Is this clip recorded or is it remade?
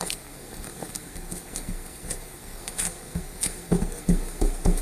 remade